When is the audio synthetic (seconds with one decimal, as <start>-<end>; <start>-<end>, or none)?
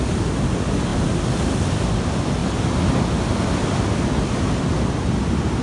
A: none